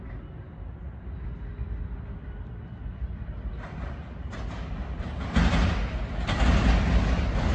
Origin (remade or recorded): recorded